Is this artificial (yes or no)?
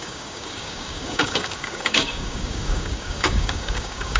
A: yes